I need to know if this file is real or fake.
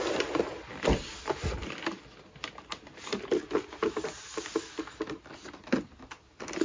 real